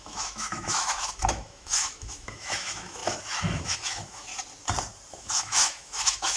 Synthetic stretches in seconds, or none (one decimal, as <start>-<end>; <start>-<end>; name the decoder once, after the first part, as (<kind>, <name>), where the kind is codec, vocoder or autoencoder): 0.0-4.3 (autoencoder, DAC-VAE); 5.1-6.4